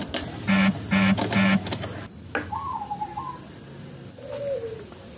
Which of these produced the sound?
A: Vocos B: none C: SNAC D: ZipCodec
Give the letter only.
B